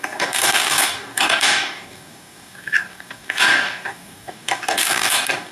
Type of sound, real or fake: fake